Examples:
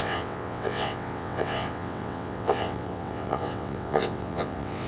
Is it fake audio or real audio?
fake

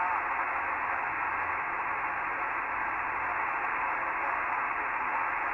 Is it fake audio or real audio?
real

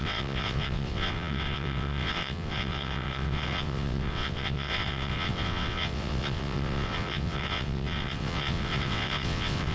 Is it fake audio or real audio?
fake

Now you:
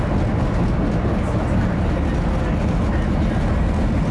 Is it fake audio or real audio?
real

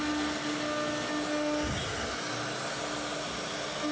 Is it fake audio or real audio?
real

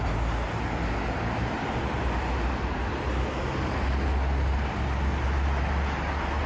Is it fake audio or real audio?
real